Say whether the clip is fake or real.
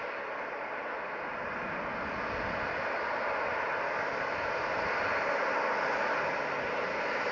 real